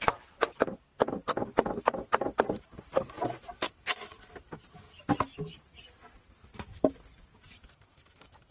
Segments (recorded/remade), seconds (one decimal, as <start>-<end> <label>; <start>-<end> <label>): 0.0-8.5 recorded